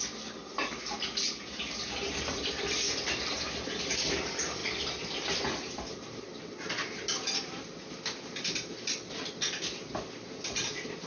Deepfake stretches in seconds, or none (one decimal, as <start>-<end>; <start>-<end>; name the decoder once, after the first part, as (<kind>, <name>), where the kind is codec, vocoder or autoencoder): none